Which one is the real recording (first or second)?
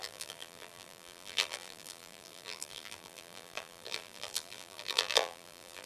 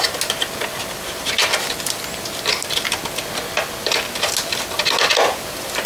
second